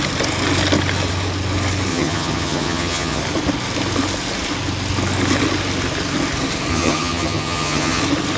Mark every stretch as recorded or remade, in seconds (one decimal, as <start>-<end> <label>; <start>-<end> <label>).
0.0-1.9 recorded; 1.9-3.2 remade; 3.2-6.7 recorded; 6.7-8.0 remade; 8.0-8.4 recorded